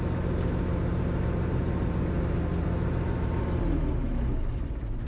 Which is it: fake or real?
real